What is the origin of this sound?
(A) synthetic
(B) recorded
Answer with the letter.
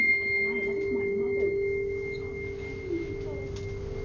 B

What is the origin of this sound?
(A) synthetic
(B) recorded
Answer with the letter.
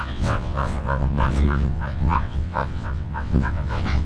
A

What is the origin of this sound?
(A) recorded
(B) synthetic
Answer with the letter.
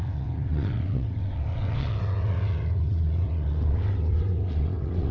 B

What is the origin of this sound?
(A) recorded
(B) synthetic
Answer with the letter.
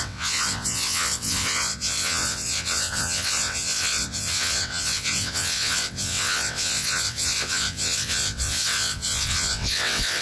B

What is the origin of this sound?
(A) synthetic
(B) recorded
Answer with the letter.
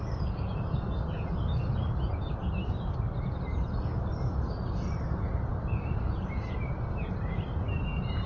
B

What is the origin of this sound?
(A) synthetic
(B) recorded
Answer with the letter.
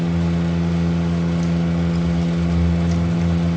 B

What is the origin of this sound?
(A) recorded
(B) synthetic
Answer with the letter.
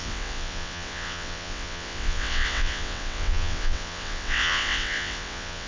B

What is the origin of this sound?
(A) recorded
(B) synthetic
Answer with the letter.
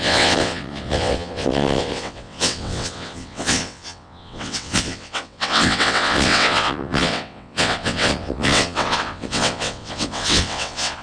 B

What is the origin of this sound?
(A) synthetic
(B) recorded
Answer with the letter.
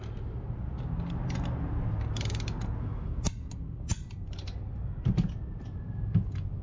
B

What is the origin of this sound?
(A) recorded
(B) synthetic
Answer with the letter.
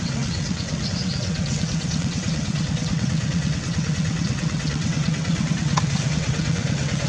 B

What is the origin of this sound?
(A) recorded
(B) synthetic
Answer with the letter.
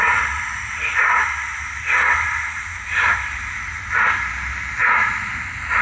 A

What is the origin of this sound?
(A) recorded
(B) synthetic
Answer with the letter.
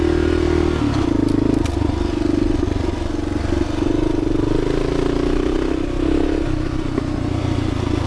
A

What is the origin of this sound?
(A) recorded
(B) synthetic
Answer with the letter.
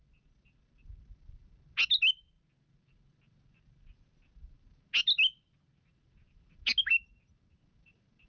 A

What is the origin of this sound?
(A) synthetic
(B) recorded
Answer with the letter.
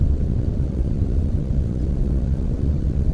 A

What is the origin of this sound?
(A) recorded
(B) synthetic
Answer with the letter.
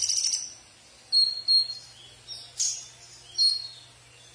A